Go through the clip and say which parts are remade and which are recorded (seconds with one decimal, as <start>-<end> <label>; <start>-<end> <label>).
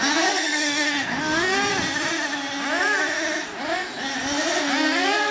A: 0.0-1.7 remade; 1.7-5.3 recorded